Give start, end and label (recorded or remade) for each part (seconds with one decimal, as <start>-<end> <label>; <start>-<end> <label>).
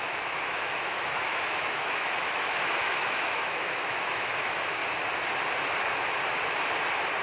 0.0-4.8 remade; 4.8-7.2 recorded